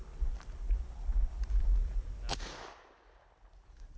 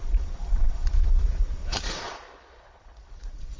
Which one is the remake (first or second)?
second